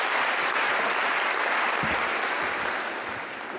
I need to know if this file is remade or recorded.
recorded